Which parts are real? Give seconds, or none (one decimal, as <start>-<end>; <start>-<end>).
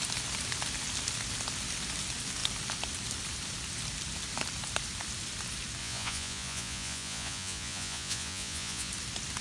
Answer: 0.0-5.8; 8.9-9.4